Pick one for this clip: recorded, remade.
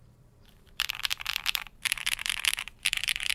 remade